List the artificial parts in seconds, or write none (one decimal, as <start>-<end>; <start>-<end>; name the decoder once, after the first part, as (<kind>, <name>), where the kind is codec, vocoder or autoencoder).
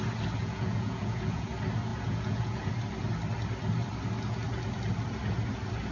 0.4-1.5 (vocoder, Vocos); 1.9-2.7